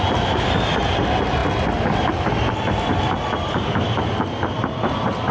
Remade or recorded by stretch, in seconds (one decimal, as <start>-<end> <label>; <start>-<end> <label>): 0.0-5.3 recorded